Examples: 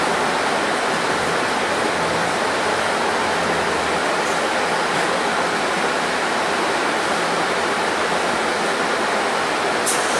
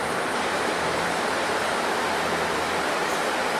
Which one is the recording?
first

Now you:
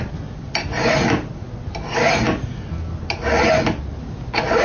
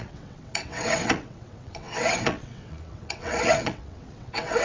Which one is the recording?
first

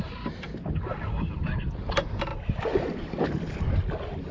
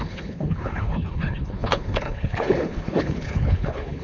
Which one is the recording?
first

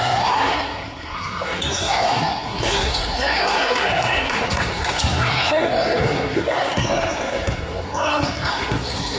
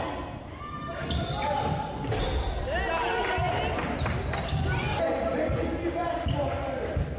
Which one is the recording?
second